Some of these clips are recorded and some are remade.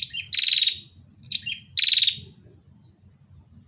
recorded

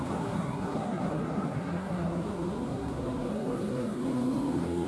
remade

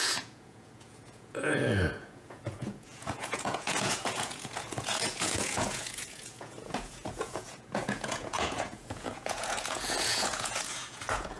remade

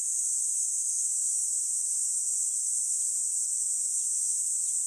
recorded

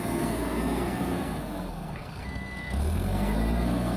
remade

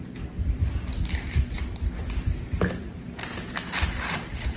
recorded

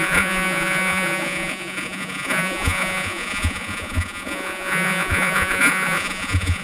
remade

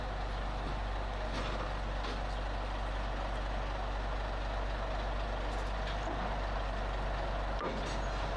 recorded